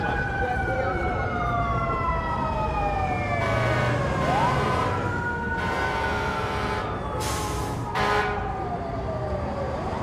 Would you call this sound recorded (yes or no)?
no